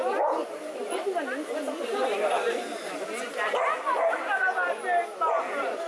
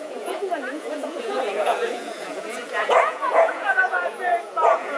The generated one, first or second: second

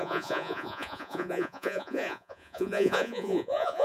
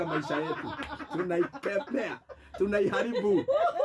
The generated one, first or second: first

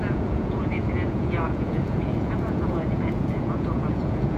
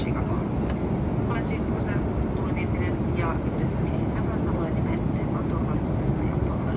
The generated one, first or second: first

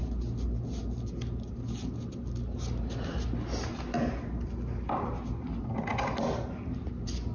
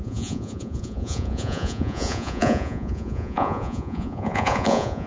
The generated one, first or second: second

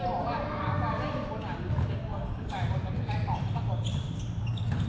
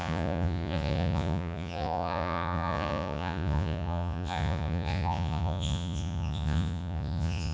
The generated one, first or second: second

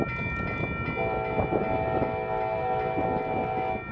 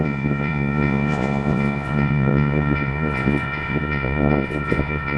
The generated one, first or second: second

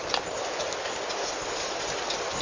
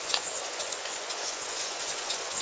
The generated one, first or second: second